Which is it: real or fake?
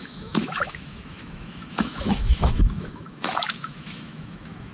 fake